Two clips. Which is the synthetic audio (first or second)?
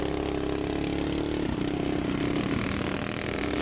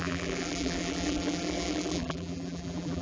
second